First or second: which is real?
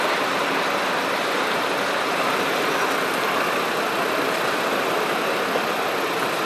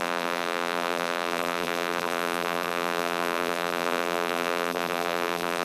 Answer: first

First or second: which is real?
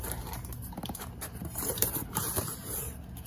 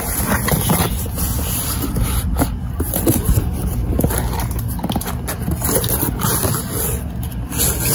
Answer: second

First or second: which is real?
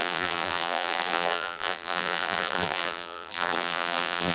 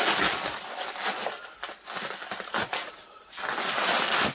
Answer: second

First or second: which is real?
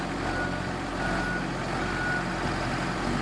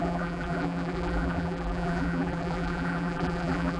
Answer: first